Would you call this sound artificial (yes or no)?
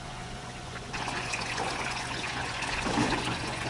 yes